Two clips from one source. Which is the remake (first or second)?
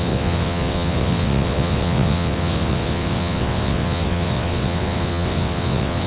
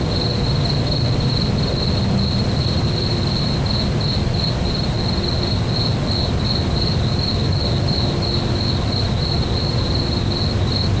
first